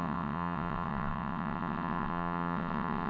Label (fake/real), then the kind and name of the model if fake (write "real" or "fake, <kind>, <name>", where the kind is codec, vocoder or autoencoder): fake, vocoder, WaveNeXt